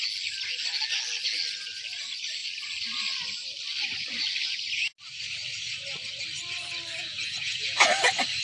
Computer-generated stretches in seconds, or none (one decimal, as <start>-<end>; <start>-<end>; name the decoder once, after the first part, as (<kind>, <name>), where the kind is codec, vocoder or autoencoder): 7.0-7.9 (vocoder, Vocos)